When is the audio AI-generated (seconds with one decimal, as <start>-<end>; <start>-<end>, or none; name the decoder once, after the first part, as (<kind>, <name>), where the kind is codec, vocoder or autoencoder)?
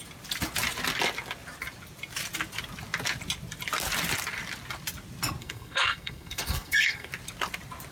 5.4-7.1 (codec, SNAC)